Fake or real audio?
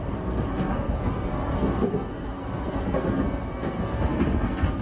fake